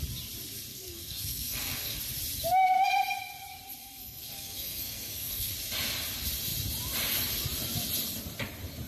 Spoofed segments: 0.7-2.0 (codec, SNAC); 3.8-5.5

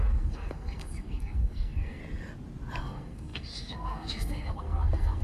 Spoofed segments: 0.0-2.0 (codec, SNAC); 2.8-5.2

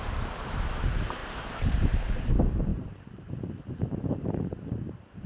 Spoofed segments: 0.0-5.3 (vocoder, BigVGAN v2)

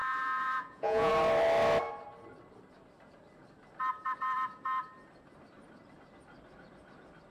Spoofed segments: 0.0-1.1 (vocoder, Vocos)